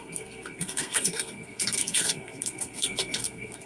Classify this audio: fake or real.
fake